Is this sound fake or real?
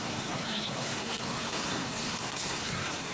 fake